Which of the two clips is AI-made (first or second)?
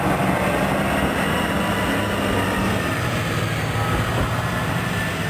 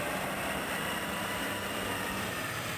second